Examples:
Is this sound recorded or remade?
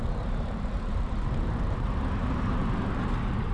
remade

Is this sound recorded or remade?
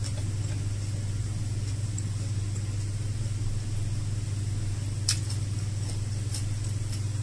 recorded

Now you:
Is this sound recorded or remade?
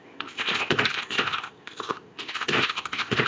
remade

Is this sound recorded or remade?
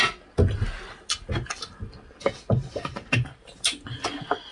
recorded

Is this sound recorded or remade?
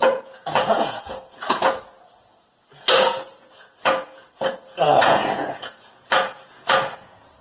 remade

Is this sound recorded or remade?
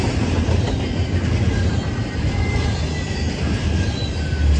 recorded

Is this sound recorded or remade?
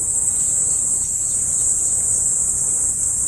remade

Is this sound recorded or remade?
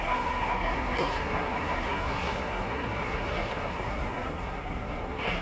remade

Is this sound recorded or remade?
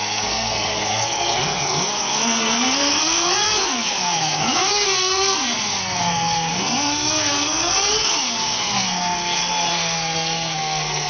remade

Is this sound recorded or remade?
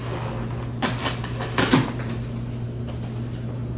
recorded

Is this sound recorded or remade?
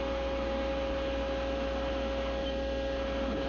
recorded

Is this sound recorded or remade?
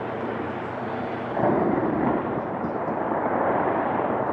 remade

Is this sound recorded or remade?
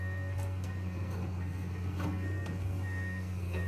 remade